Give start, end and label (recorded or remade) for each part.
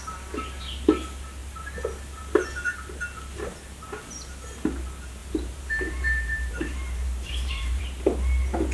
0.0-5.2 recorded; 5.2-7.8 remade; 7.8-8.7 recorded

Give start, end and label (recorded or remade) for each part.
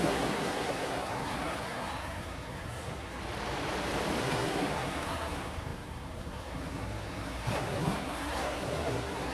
0.0-3.2 remade; 3.2-4.2 recorded; 4.2-9.3 remade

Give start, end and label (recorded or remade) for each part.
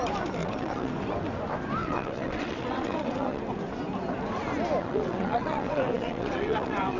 0.0-0.4 recorded; 0.4-0.9 remade; 0.9-1.8 recorded; 1.8-3.4 remade; 3.4-4.8 recorded; 4.8-7.0 remade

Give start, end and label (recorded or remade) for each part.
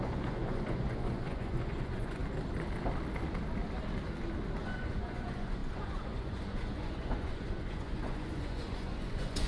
0.0-2.2 remade; 2.2-4.6 recorded; 4.6-9.5 remade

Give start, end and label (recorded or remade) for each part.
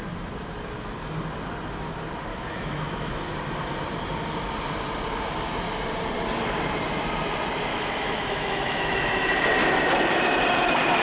0.0-2.3 recorded; 2.3-3.3 remade; 3.3-7.7 recorded; 7.7-9.1 remade; 9.1-11.0 recorded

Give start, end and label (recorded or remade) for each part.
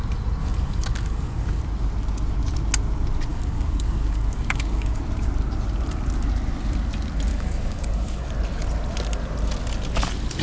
0.0-0.4 recorded; 0.4-1.6 remade; 1.6-3.3 recorded; 3.3-5.0 remade; 5.0-7.3 recorded; 7.3-8.3 remade; 8.3-10.4 recorded